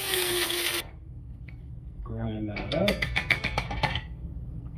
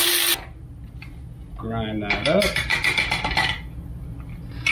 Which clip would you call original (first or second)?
second